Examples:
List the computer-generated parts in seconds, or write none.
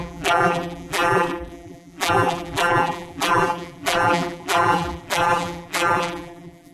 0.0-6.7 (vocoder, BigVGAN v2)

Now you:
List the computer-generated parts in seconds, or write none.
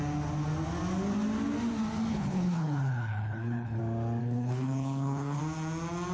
2.1-3.8 (codec, HILCodec); 4.2-5.4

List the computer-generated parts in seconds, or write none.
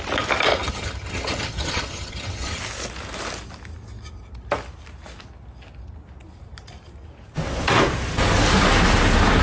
0.5-2.6 (vocoder, HiFi-GAN)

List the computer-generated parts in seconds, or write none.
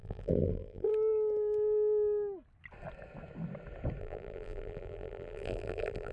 0.0-0.9 (vocoder, BigVGAN v2); 4.0-6.1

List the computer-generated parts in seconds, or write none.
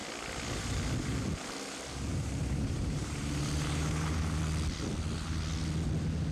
2.1-4.4 (vocoder, BigVGAN v2)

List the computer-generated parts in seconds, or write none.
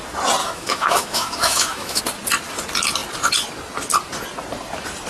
0.4-2.0 (autoencoder, DAC-VAE)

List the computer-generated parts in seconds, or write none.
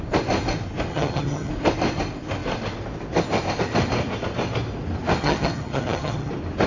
0.9-1.5 (vocoder, HiFi-GAN); 5.2-6.3